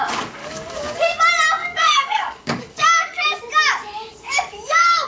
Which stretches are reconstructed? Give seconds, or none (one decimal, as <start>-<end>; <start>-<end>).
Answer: 0.4-1.2; 1.6-3.4; 4.1-5.1